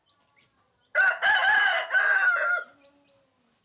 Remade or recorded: recorded